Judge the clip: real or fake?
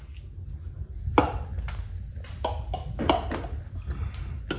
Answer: real